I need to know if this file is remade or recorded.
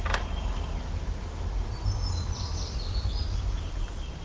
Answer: recorded